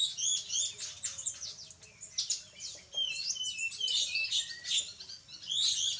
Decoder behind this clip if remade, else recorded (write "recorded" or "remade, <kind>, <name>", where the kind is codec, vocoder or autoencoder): recorded